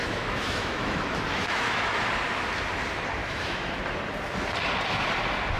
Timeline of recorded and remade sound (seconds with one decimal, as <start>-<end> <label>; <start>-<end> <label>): 0.0-2.1 remade; 2.1-3.2 recorded; 3.2-3.8 remade; 3.8-5.6 recorded